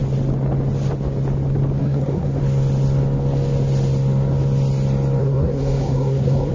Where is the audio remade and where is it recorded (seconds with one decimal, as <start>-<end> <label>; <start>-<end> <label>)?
0.0-1.8 recorded; 1.8-2.4 remade; 2.4-5.2 recorded; 5.2-6.5 remade